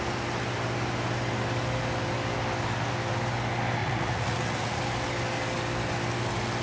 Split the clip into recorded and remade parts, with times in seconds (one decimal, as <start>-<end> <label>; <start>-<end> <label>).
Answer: 0.0-3.8 recorded; 3.8-4.8 remade; 4.8-6.6 recorded